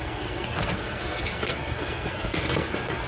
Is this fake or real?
fake